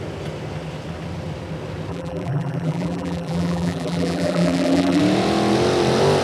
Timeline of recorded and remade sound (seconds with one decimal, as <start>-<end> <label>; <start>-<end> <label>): 0.0-1.9 recorded; 1.9-5.0 remade; 5.0-6.2 recorded